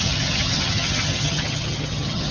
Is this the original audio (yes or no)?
no